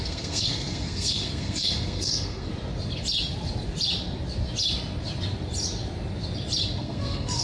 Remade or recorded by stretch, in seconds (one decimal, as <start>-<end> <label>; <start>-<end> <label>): 0.0-2.5 remade; 2.5-6.8 recorded; 6.8-7.4 remade